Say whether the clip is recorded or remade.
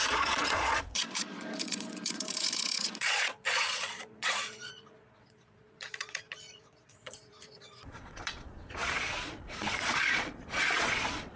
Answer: remade